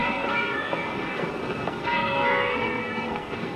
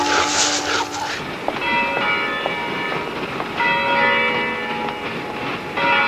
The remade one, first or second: first